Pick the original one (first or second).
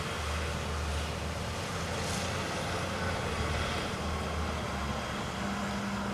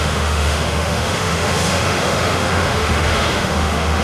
first